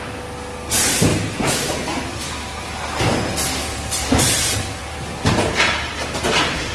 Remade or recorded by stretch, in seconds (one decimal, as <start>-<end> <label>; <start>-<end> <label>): 0.0-1.1 recorded; 1.1-1.7 remade; 1.7-3.6 recorded; 3.6-5.6 remade; 5.6-6.7 recorded